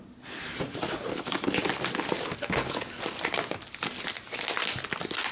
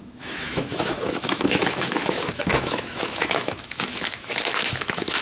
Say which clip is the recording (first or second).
first